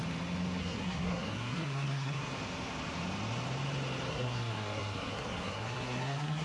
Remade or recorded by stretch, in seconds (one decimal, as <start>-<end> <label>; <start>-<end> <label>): 0.0-0.6 recorded; 0.6-2.3 remade; 2.3-4.1 recorded; 4.1-6.4 remade